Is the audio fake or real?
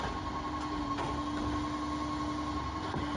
real